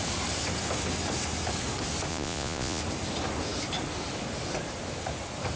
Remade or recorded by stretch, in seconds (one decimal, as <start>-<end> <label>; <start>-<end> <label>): 0.0-2.1 recorded; 2.1-2.8 remade; 2.8-5.6 recorded